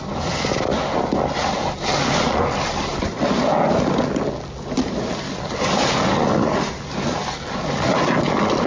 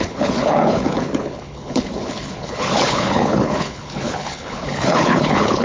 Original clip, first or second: first